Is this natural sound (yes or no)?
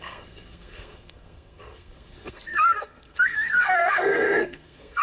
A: no